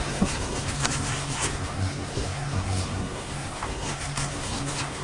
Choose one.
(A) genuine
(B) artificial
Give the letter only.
B